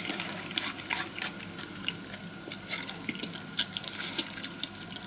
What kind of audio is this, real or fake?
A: real